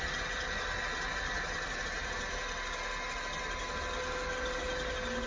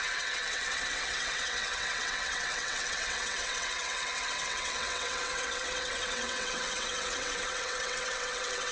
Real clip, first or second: first